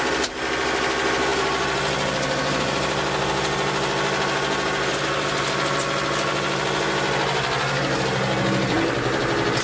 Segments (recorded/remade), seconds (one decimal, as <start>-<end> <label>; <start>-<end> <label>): 0.0-9.6 recorded